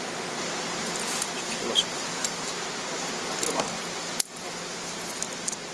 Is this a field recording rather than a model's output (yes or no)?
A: yes